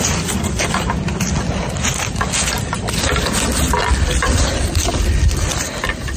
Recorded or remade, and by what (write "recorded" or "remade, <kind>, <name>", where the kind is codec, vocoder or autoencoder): recorded